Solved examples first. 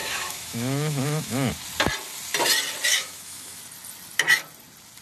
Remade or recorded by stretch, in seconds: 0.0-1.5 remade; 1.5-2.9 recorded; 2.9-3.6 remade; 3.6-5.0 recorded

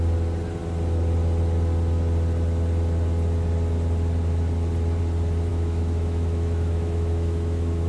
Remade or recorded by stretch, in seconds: 0.0-5.5 recorded; 5.5-7.9 remade